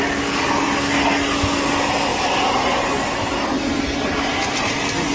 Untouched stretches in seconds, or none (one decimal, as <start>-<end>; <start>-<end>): 0.0-5.1